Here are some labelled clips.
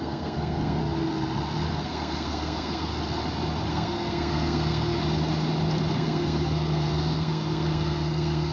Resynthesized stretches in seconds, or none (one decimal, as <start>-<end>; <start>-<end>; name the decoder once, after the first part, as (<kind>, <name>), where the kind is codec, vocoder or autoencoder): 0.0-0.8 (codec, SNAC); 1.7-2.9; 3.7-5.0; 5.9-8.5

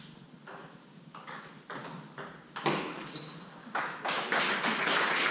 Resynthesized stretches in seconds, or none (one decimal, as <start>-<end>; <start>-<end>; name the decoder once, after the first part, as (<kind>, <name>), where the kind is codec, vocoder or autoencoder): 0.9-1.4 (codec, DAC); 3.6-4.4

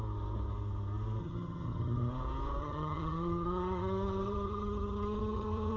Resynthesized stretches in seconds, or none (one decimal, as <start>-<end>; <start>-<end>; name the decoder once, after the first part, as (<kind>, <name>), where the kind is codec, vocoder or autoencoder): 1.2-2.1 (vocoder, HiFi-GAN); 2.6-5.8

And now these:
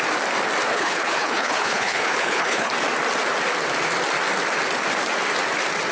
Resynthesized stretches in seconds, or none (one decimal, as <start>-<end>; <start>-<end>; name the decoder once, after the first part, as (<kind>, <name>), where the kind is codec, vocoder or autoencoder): 0.7-2.7 (codec, HILCodec)

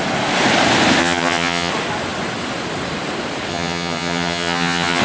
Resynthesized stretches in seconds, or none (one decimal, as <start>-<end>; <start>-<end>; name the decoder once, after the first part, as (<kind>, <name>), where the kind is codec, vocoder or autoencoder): 1.0-1.7 (vocoder, HiFi-GAN); 3.5-5.0